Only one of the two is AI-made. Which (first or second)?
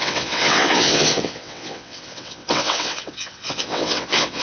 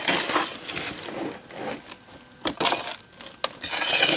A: first